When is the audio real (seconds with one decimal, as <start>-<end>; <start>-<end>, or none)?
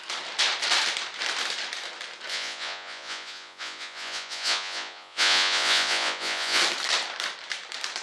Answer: 0.0-2.3; 6.6-8.0